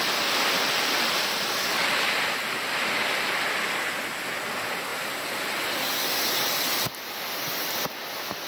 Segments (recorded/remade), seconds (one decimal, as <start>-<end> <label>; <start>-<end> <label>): 0.0-8.5 recorded